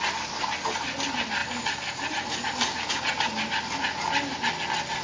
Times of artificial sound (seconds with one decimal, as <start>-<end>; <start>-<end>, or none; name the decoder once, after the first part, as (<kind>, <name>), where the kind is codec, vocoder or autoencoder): none

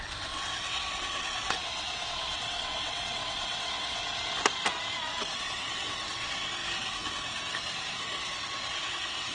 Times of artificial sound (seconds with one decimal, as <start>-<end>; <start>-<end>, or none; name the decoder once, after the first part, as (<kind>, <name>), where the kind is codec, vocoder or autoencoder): 0.0-4.0 (vocoder, WaveNeXt); 5.4-6.6; 7.9-9.3

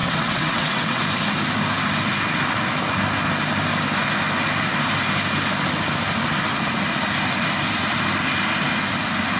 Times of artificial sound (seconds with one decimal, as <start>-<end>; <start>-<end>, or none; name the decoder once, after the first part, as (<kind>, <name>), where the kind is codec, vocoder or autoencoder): 0.0-1.0 (vocoder, WaveNeXt)

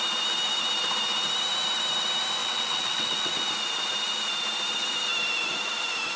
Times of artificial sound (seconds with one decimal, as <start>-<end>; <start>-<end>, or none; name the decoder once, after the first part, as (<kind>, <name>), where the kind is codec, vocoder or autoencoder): 2.4-3.3 (vocoder, WaveNeXt)

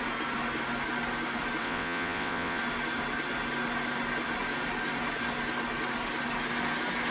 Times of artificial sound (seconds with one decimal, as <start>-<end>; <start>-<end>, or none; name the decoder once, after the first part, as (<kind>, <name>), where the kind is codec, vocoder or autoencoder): 1.6-2.6 (vocoder, WaveNeXt)

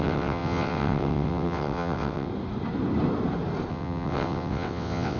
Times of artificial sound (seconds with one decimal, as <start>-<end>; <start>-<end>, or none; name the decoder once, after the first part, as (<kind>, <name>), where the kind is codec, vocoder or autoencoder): 0.0-2.3 (vocoder, WaveNeXt); 3.7-5.2

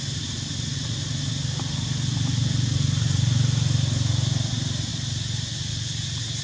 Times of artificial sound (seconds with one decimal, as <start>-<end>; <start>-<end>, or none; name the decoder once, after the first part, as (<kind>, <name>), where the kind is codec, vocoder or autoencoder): none